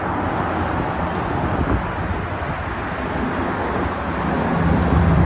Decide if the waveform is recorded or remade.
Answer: recorded